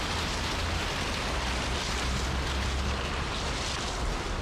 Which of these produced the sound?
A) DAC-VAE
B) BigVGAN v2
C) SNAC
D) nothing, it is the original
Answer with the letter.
D